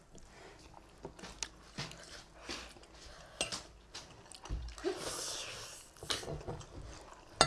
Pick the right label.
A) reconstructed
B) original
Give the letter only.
B